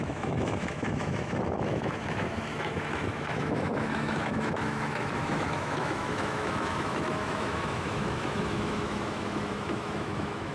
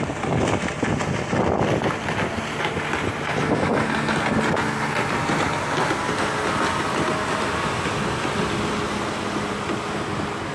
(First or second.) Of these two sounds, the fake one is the first